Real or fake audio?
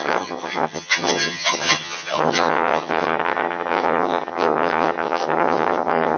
fake